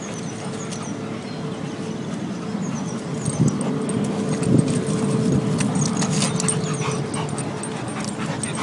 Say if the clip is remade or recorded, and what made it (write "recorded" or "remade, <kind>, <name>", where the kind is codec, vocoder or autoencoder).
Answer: recorded